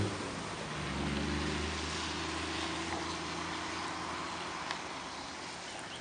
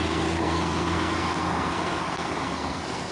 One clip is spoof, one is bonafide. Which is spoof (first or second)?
second